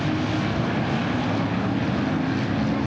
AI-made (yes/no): no